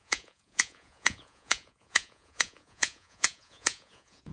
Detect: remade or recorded remade